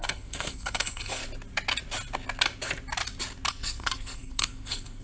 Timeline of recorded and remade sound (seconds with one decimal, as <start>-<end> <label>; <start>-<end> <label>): 0.0-1.2 remade; 1.2-3.5 recorded; 3.5-5.0 remade